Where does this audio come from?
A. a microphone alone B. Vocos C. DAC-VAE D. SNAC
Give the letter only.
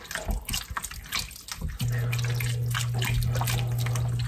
A